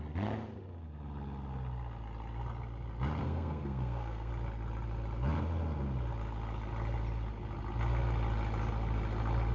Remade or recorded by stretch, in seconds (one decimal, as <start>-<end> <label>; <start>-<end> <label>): 0.0-3.2 recorded; 3.2-4.3 remade; 4.3-9.5 recorded